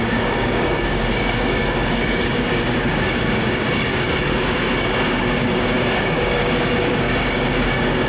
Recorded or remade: remade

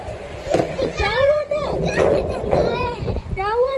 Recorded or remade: remade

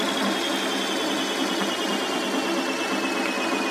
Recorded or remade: recorded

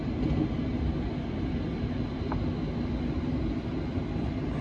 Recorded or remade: recorded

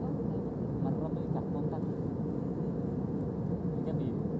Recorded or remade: recorded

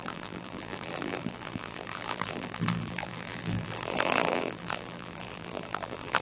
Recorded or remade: remade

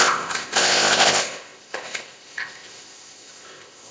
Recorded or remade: remade